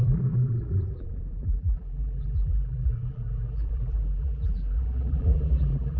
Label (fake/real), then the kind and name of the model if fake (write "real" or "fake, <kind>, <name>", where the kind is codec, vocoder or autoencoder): fake, vocoder, BigVGAN v2